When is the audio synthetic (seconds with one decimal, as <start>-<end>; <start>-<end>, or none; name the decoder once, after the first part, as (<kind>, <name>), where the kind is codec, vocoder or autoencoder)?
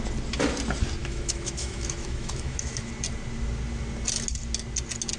1.0-2.9 (autoencoder, DAC-VAE)